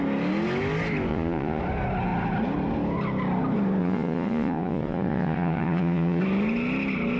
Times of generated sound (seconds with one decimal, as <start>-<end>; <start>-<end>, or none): 1.1-1.6; 3.8-6.2